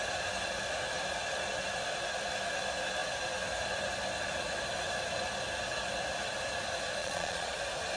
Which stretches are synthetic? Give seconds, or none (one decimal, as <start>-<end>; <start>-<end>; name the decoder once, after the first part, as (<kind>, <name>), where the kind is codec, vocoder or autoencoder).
7.0-7.6 (vocoder, Vocos)